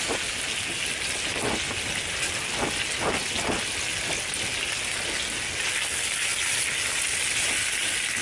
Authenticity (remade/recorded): recorded